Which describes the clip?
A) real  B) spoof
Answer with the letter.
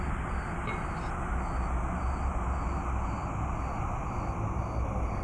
A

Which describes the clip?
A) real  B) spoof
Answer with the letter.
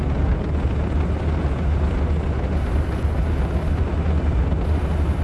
A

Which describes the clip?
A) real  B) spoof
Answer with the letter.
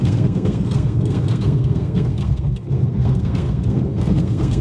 B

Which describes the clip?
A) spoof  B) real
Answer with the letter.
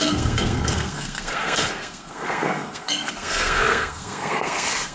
A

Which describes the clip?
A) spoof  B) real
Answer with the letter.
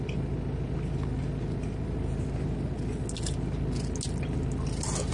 B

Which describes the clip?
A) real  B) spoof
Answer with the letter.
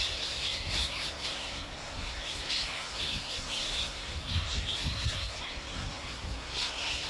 B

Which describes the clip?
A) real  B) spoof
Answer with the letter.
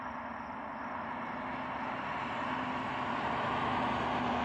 A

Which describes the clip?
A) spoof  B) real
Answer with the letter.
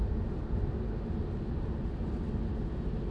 B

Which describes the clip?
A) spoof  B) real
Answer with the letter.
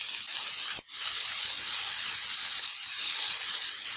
B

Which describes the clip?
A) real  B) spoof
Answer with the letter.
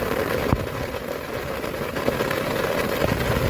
A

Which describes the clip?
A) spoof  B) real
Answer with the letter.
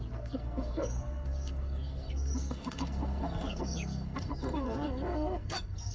A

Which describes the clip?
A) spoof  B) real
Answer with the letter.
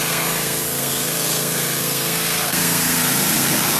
A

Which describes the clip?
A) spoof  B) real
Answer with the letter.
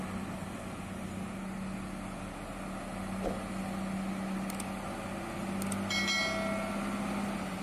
B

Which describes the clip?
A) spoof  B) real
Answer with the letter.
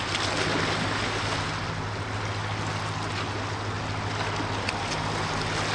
B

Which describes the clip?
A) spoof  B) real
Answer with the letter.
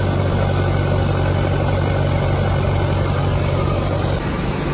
B